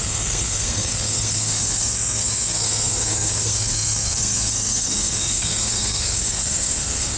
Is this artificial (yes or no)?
yes